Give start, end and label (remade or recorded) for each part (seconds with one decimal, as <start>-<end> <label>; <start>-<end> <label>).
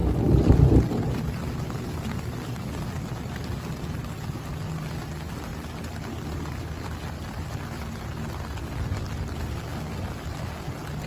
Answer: 0.0-0.7 remade; 0.7-5.5 recorded; 5.5-8.0 remade; 8.0-9.7 recorded; 9.7-10.5 remade; 10.5-11.1 recorded